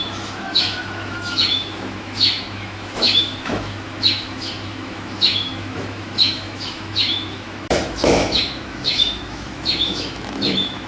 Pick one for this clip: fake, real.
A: fake